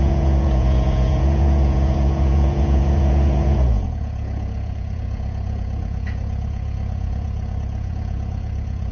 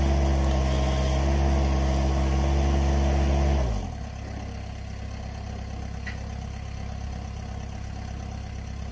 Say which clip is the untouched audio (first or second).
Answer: second